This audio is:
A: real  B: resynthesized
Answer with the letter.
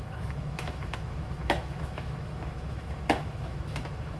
B